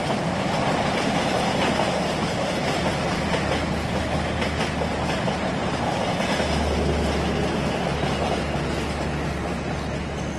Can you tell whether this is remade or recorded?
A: recorded